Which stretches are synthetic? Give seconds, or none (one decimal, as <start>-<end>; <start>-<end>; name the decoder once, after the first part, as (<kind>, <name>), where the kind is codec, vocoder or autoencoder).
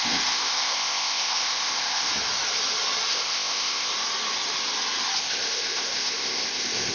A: 0.0-2.1 (codec, ZipCodec); 3.1-3.9; 5.2-6.9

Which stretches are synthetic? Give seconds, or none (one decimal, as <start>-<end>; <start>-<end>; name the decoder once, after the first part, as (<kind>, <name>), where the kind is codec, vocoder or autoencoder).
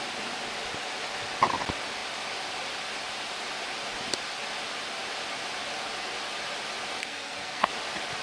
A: 7.0-7.7 (codec, SNAC)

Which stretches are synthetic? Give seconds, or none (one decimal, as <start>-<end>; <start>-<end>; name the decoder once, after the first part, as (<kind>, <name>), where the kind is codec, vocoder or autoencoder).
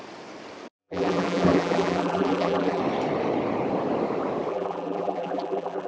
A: 0.8-2.8 (vocoder, BigVGAN v2); 4.5-5.9